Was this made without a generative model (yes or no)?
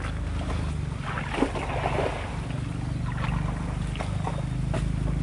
yes